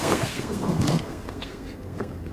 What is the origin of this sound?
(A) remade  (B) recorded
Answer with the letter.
A